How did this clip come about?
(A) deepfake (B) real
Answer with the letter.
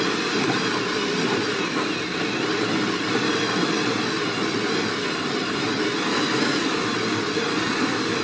B